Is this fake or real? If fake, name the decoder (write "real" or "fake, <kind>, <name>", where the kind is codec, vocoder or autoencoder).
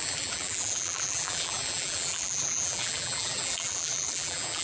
fake, vocoder, BigVGAN v2